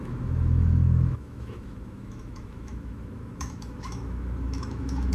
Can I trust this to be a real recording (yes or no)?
no